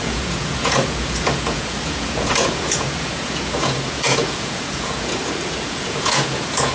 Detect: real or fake fake